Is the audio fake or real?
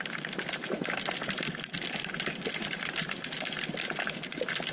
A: real